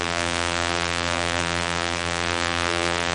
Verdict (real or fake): fake